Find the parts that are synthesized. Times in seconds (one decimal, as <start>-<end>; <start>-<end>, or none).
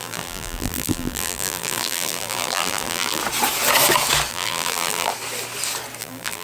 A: 0.0-3.2; 4.3-5.1; 6.0-6.4